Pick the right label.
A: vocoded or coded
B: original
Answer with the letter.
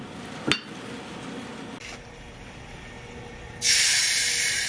B